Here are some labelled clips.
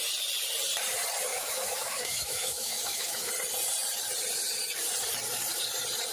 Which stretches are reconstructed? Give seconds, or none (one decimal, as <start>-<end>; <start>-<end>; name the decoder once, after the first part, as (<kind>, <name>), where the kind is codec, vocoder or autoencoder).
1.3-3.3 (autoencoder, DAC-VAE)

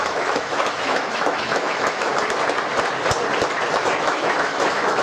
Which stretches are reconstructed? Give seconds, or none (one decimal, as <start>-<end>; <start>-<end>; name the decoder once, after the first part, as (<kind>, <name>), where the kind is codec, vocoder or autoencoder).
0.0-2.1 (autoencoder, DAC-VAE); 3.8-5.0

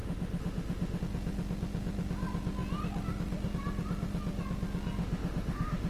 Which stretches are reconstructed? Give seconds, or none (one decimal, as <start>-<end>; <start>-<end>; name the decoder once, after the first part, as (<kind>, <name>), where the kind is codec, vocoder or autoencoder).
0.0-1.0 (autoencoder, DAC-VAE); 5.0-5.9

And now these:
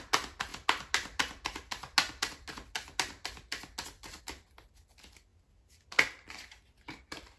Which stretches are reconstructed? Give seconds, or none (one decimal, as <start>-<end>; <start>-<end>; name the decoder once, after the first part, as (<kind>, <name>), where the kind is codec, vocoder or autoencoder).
none

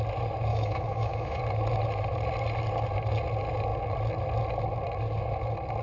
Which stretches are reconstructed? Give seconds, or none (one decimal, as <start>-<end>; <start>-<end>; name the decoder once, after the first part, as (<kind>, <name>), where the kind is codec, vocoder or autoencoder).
0.5-1.4 (autoencoder, DAC-VAE)

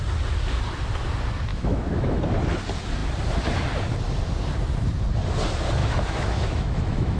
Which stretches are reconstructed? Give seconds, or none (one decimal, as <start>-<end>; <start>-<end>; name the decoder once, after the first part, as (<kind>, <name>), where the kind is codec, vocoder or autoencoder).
1.5-2.2 (autoencoder, DAC-VAE); 5.8-7.2

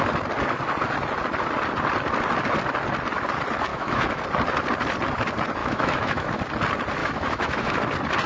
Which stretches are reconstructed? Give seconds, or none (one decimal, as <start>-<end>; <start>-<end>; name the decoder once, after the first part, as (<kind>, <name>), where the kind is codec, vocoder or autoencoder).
3.7-4.2 (autoencoder, DAC-VAE); 5.6-6.3; 7.0-7.8

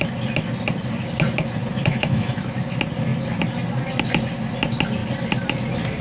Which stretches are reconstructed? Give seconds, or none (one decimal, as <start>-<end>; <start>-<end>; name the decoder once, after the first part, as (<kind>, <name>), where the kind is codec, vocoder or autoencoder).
1.7-2.4 (autoencoder, DAC-VAE)